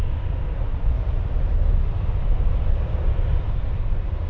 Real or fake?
real